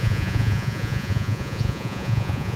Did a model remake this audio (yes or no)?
yes